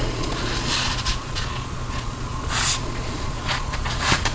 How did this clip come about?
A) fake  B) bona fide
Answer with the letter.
A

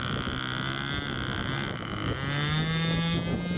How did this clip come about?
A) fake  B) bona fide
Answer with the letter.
B